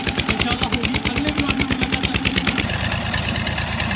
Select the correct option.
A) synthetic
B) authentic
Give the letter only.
B